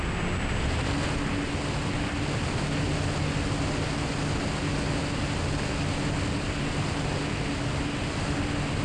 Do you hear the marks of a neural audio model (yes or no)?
no